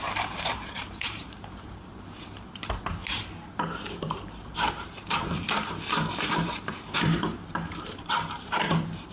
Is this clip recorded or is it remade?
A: remade